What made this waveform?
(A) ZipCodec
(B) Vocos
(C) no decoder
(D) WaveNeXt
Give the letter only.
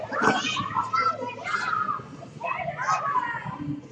C